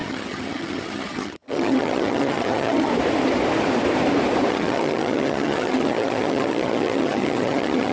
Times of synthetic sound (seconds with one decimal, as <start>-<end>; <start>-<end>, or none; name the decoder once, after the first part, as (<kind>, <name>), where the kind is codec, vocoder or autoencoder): 0.0-2.9 (vocoder, HiFi-GAN); 4.5-7.9